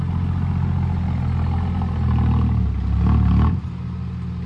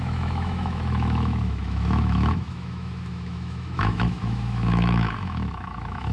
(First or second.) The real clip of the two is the first